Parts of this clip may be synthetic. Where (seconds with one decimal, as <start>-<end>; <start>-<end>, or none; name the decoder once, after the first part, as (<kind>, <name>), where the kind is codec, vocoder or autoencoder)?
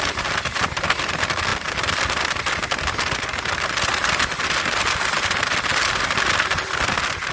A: none